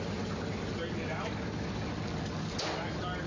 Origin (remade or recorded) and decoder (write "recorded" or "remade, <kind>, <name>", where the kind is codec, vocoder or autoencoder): recorded